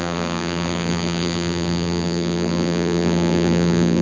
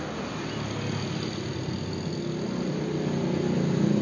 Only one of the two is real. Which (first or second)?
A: second